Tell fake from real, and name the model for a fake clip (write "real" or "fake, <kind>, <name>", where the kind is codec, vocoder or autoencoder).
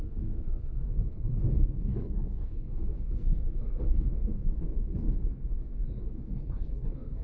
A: fake, codec, SNAC